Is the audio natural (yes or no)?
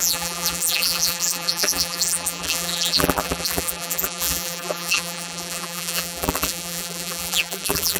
no